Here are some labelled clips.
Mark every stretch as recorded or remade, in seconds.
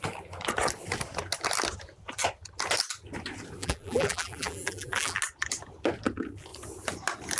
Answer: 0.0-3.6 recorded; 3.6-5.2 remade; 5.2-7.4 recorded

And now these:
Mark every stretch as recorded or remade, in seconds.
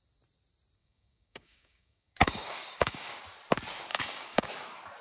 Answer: 0.0-0.8 recorded; 0.8-3.2 remade; 3.2-3.9 recorded; 3.9-4.5 remade; 4.5-5.0 recorded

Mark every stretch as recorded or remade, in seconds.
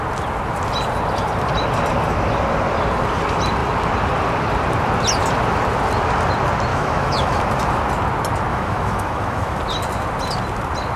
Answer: 0.0-6.7 recorded; 6.7-7.4 remade; 7.4-8.5 recorded; 8.5-9.6 remade; 9.6-11.0 recorded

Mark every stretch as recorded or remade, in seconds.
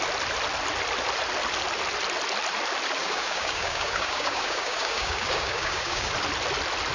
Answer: 0.0-3.0 recorded; 3.0-6.1 remade; 6.1-6.9 recorded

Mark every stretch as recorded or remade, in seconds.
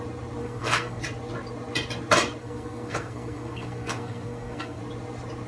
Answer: 0.0-0.4 recorded; 0.4-1.0 remade; 1.0-2.4 recorded; 2.4-4.8 remade; 4.8-5.5 recorded